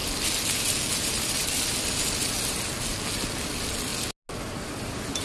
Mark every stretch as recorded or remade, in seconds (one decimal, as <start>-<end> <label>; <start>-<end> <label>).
0.0-5.2 recorded